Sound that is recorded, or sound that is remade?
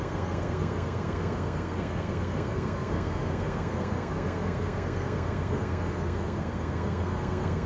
remade